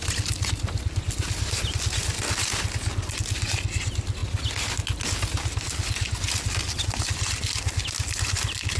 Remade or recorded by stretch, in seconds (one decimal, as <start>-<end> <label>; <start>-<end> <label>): 0.0-8.8 recorded